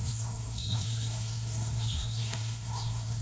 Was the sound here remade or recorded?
remade